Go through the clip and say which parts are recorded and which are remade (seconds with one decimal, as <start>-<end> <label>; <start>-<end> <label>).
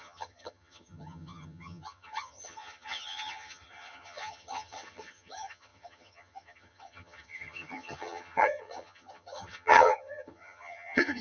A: 0.0-11.2 remade